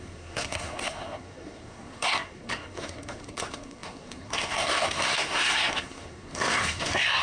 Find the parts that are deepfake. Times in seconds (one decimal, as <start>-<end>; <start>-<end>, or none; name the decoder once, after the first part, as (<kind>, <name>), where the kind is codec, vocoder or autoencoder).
0.0-7.2 (codec, SNAC)